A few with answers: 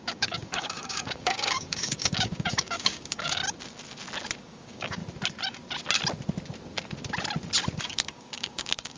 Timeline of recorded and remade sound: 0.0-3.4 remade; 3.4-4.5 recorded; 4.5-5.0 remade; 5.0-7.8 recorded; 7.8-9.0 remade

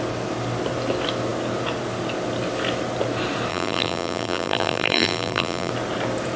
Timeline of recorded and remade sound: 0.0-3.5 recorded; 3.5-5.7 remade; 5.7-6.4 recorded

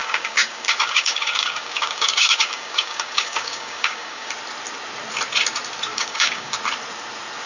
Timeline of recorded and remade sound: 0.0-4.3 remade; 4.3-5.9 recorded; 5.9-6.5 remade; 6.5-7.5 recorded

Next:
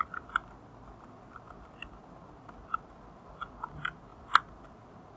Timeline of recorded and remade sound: 0.0-5.2 recorded

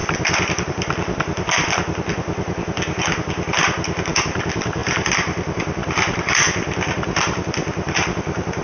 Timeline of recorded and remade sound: 0.0-4.8 recorded; 4.8-8.6 remade

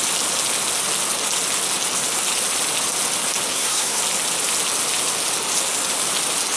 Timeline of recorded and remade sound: 0.0-3.5 recorded; 3.5-4.0 remade; 4.0-6.6 recorded